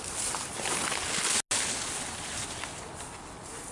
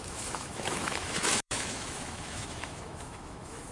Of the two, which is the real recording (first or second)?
first